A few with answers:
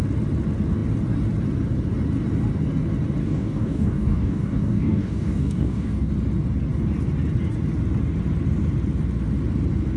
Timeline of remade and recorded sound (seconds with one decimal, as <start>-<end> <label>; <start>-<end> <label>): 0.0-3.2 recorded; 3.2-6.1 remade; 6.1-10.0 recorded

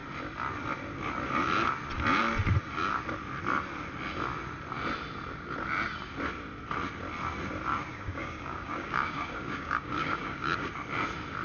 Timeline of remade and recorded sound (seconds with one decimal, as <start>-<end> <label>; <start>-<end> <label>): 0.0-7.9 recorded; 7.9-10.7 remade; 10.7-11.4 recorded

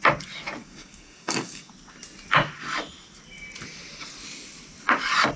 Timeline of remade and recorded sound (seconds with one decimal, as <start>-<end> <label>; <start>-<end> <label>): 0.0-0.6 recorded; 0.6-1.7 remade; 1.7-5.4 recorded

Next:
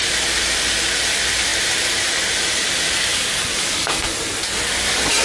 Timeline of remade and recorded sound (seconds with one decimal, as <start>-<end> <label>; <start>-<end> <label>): 0.0-3.1 recorded; 3.1-4.2 remade; 4.2-5.2 recorded